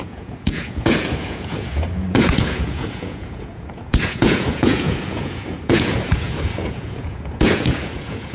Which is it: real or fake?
fake